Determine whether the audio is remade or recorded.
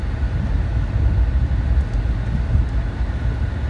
recorded